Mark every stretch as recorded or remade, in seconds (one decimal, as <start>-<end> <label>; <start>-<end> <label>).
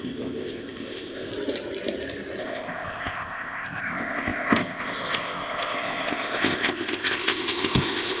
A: 0.0-1.3 remade; 1.3-2.4 recorded; 2.4-8.2 remade